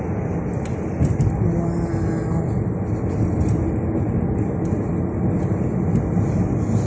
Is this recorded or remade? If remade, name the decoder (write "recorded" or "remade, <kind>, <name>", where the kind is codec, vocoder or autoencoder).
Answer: recorded